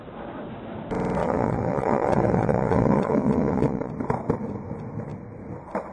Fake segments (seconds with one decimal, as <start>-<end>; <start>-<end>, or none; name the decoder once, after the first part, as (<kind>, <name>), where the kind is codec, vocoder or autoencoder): 1.2-3.9 (vocoder, WaveNeXt)